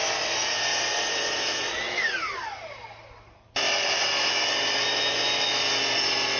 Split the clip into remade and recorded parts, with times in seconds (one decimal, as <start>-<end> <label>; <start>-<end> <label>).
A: 0.0-6.4 recorded